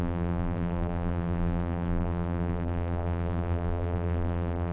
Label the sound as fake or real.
fake